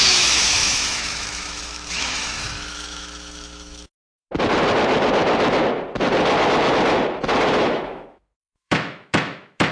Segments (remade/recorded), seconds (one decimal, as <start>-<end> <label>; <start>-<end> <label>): 0.0-4.2 remade; 4.2-7.6 recorded; 7.6-9.7 remade